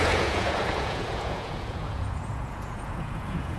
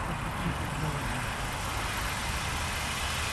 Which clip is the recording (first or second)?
second